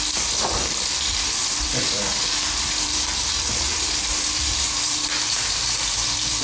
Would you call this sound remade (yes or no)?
yes